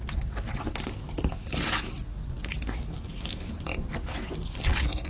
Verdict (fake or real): real